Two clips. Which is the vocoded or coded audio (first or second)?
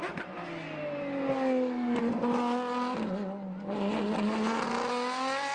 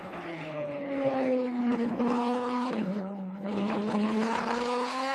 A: second